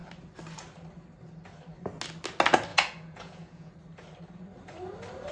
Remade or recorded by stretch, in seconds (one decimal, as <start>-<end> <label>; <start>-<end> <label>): 0.0-2.7 recorded; 2.7-3.7 remade; 3.7-5.3 recorded